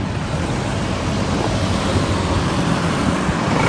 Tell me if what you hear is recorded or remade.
remade